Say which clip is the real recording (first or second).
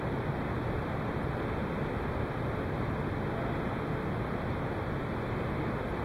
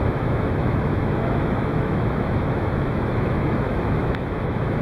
first